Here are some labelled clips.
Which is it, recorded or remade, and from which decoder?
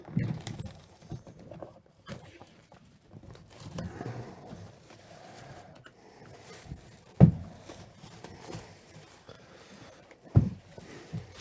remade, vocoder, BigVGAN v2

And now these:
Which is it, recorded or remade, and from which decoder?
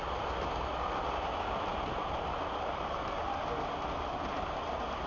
recorded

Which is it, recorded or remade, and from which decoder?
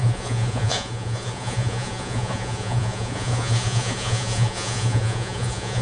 remade, vocoder, Vocos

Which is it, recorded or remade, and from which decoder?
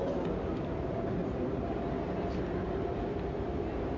recorded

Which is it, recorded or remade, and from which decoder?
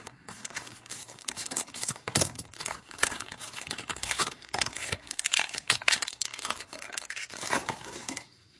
remade, codec, SNAC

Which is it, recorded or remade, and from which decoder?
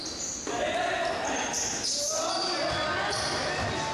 recorded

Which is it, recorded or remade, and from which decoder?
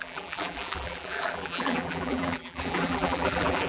remade, vocoder, BigVGAN v2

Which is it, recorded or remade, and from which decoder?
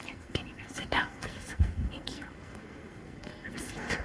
remade, codec, SNAC